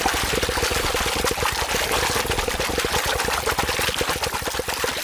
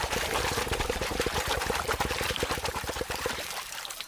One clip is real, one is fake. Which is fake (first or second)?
second